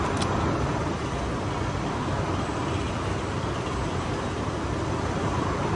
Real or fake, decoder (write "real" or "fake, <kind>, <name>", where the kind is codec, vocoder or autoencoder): real